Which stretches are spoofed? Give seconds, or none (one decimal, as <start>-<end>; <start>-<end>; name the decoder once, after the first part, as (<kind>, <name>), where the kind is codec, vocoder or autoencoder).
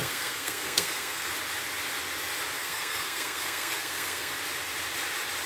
0.0-1.3 (codec, SNAC); 2.6-4.3